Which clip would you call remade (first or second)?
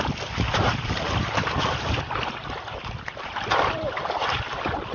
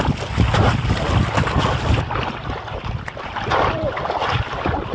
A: first